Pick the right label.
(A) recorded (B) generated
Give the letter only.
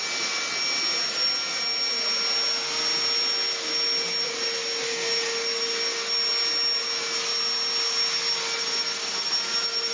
A